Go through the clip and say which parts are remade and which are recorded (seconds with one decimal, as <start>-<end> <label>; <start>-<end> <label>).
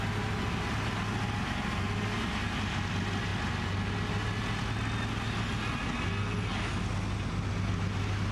0.0-8.3 recorded